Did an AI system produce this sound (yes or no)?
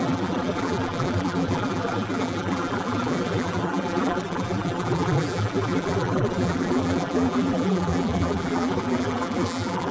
yes